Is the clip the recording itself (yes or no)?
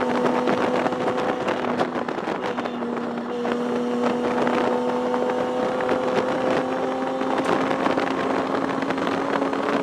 yes